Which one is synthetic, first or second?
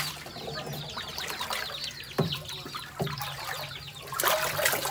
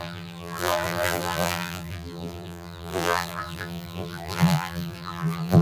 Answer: second